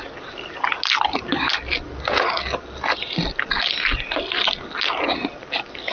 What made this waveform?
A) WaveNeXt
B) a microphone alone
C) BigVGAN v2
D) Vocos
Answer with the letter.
B